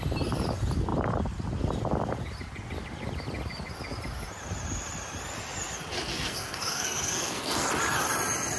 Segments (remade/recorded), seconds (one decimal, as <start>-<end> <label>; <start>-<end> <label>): 0.0-6.1 recorded; 6.1-7.7 remade; 7.7-8.6 recorded